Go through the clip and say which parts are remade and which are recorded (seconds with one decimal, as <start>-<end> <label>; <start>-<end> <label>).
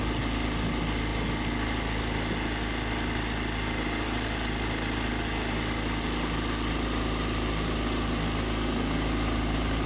0.0-9.9 recorded